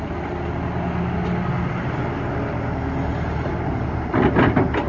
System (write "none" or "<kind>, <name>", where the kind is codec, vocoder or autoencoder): none